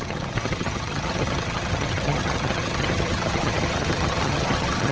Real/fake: fake